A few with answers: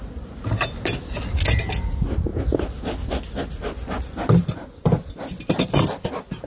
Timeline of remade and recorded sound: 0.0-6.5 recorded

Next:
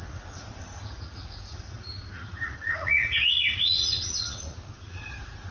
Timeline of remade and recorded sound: 0.0-5.5 remade

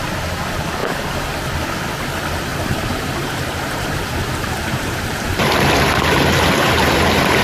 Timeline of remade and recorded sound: 0.0-0.8 recorded; 0.8-1.5 remade; 1.5-2.5 recorded; 2.5-5.6 remade; 5.6-7.4 recorded

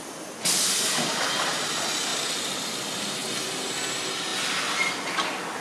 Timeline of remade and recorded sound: 0.0-5.6 recorded